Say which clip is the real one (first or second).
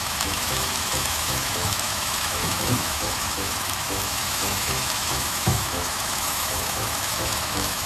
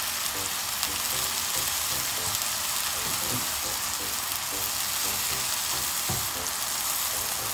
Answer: second